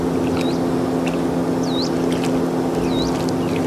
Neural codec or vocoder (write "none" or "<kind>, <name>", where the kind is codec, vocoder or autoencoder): none